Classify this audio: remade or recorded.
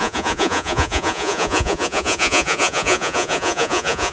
remade